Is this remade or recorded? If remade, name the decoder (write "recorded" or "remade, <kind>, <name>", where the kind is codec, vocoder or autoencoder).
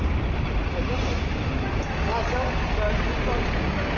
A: recorded